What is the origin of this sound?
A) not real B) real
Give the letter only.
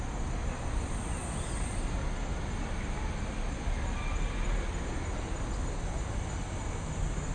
B